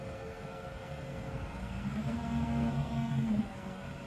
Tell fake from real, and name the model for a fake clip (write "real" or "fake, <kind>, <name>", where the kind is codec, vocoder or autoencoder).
fake, codec, SNAC